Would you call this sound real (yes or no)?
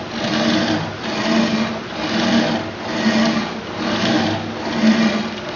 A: yes